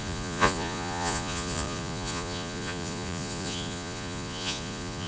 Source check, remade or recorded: remade